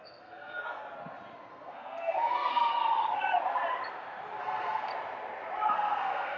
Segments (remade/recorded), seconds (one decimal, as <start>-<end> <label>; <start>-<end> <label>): 0.0-0.8 remade; 0.8-1.5 recorded; 1.5-2.7 remade; 2.7-4.4 recorded; 4.4-4.9 remade; 4.9-5.7 recorded; 5.7-6.4 remade